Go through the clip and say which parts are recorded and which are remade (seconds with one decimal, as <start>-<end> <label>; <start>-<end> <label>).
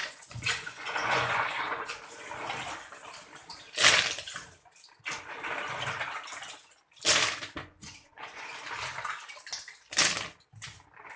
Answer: 0.0-2.0 remade; 2.0-7.6 recorded; 7.6-8.5 remade; 8.5-11.2 recorded